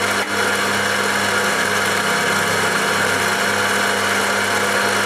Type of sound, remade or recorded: recorded